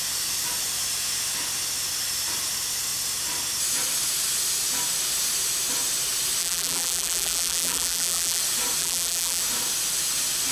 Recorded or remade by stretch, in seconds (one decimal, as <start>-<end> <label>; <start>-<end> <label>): 0.0-6.4 recorded; 6.4-8.4 remade; 8.4-8.8 recorded; 8.8-9.4 remade; 9.4-10.5 recorded